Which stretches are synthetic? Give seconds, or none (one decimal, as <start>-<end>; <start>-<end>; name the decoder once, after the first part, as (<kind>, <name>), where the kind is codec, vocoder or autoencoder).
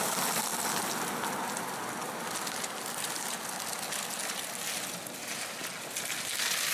none